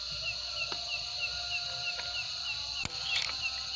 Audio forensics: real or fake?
real